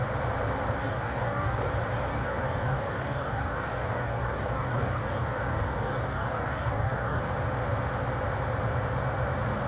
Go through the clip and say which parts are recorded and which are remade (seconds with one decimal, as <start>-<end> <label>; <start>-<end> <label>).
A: 0.0-0.8 recorded; 0.8-1.7 remade; 1.7-2.1 recorded; 2.1-7.2 remade; 7.2-9.7 recorded